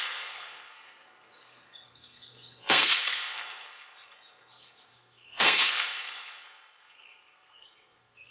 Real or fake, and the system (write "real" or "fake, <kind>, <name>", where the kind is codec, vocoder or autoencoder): fake, codec, SNAC